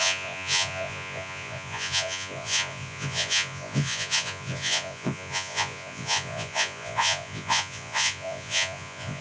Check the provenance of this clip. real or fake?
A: fake